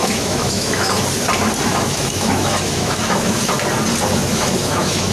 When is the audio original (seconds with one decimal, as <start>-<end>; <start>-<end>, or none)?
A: 0.9-1.7; 3.4-4.3